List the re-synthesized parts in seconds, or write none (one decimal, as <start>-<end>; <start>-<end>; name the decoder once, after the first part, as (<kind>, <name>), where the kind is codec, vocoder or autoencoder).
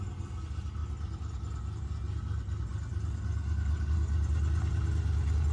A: none